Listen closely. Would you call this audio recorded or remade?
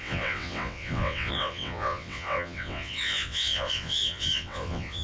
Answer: remade